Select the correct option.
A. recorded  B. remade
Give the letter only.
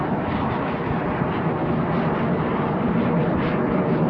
B